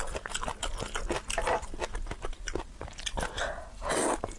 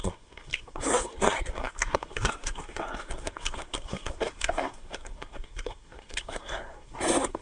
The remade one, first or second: second